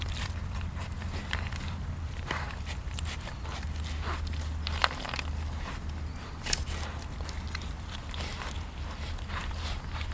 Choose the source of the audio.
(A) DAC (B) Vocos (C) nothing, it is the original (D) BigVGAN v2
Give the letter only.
C